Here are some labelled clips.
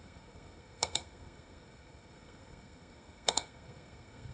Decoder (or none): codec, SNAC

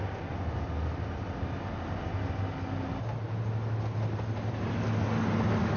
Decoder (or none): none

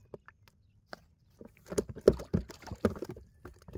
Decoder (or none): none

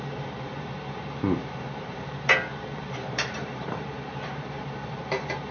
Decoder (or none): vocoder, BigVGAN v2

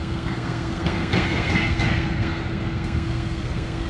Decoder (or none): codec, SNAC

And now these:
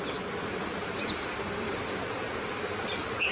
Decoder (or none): none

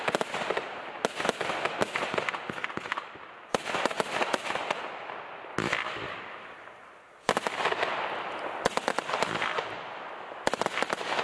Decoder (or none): none